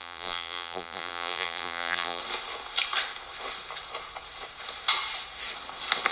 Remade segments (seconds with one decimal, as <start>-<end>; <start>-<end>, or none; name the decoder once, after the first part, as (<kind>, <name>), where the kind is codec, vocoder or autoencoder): 0.0-2.2 (vocoder, BigVGAN v2)